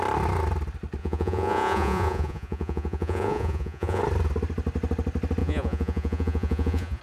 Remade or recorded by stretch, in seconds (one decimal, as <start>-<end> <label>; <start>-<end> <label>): 0.0-1.0 recorded; 1.0-4.0 remade; 4.0-5.4 recorded; 5.4-7.0 remade